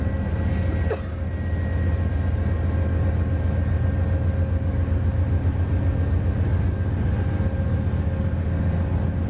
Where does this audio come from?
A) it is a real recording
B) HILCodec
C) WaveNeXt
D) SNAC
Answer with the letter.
A